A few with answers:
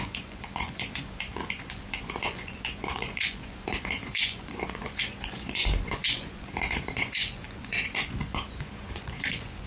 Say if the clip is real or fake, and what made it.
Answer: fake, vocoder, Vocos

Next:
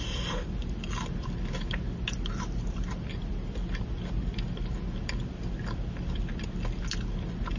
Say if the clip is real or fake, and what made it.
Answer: real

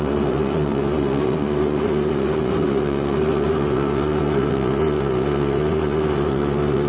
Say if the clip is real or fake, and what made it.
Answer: fake, vocoder, Vocos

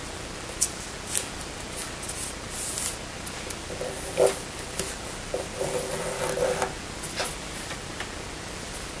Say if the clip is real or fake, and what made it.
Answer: real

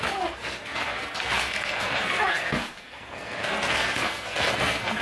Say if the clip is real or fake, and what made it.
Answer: fake, codec, SNAC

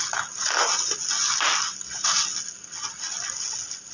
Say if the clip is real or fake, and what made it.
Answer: real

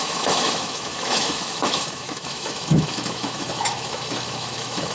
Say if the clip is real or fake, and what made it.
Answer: fake, autoencoder, DAC-VAE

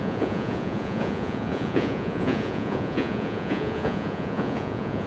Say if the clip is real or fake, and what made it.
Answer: fake, vocoder, Vocos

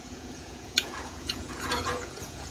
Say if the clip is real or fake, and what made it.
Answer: fake, vocoder, Vocos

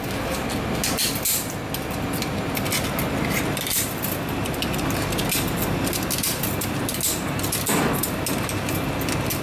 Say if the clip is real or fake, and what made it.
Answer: real